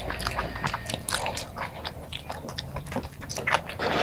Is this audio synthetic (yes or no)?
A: no